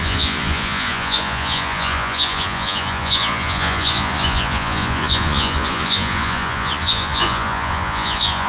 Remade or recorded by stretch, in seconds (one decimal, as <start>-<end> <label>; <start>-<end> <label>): 0.0-8.5 remade